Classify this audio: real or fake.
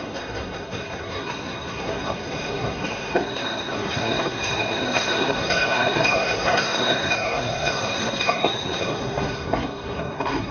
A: fake